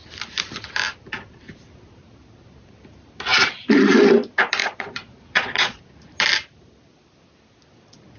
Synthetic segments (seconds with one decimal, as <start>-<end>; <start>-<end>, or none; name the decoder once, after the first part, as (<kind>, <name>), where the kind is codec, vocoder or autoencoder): 3.3-4.1 (vocoder, Vocos); 4.6-5.8